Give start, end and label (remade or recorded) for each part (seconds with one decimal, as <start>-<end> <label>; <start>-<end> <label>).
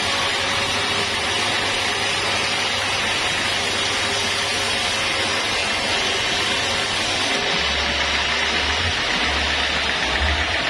0.0-5.6 recorded; 5.6-6.3 remade; 6.3-10.7 recorded